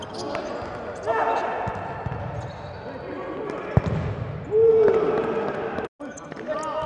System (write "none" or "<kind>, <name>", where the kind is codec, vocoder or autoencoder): none